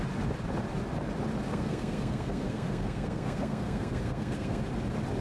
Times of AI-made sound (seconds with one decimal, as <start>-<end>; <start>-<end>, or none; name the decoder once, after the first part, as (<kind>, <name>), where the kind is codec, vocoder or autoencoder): 1.5-4.6 (codec, SNAC)